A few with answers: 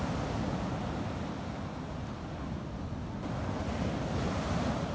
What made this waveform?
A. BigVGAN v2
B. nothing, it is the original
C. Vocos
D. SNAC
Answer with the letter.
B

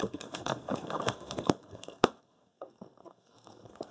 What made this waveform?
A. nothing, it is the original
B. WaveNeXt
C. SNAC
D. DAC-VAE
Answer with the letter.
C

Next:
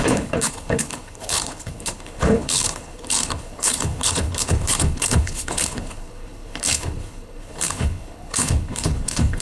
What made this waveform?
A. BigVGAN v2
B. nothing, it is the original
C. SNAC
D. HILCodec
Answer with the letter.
D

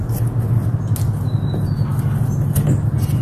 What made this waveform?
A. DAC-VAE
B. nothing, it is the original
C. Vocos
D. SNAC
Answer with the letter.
B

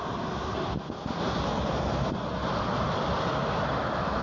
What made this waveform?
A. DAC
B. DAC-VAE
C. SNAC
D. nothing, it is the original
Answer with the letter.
D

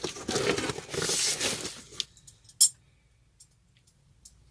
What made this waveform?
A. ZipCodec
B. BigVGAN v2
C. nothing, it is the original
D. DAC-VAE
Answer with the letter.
C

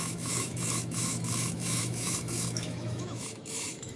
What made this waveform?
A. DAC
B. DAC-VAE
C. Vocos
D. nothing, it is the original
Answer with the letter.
B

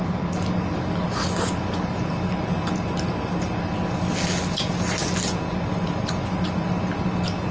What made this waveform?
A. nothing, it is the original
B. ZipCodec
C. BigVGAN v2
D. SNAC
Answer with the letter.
A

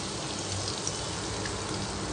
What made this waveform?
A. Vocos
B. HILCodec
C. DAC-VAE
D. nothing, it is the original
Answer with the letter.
D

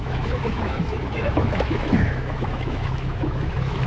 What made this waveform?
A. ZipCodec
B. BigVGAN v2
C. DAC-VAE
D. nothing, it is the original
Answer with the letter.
C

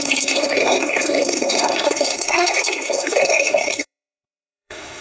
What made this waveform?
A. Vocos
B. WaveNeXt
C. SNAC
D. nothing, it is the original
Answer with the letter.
C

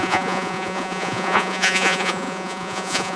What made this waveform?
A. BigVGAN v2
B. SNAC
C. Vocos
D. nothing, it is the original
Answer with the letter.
C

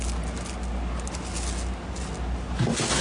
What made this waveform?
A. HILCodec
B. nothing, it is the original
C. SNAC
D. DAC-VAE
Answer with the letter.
B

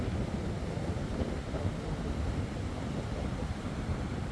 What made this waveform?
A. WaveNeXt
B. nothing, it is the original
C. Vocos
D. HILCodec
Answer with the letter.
B